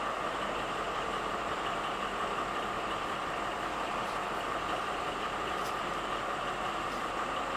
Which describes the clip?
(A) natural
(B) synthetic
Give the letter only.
B